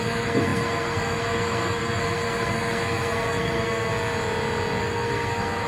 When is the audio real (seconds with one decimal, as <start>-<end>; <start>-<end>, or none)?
3.9-4.8